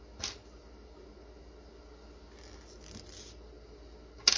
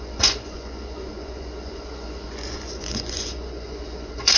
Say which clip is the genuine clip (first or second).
first